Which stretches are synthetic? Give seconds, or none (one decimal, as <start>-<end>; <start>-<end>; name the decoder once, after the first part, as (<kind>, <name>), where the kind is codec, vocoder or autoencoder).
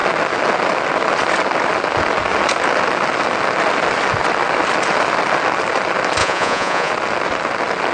6.2-6.9 (vocoder, Vocos)